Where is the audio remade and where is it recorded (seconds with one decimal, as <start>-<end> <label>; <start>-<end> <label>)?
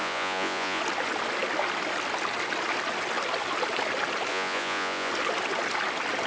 0.0-0.8 remade; 0.8-4.3 recorded; 4.3-5.1 remade; 5.1-6.3 recorded